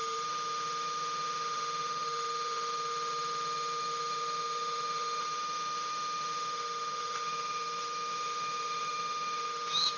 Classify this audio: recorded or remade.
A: remade